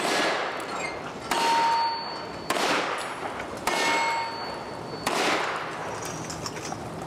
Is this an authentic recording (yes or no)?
yes